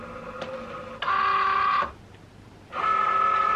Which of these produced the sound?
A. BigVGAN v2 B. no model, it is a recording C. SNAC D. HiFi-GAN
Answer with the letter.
B